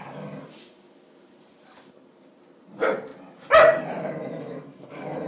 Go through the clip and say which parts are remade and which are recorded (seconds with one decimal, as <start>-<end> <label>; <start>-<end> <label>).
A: 0.0-4.2 recorded; 4.2-5.3 remade